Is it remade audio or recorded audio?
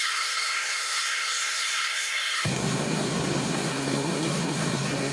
remade